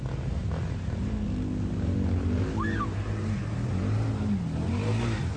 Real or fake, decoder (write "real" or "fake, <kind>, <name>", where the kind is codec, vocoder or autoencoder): real